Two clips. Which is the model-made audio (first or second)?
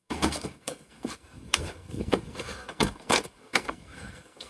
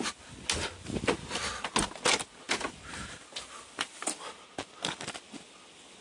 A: first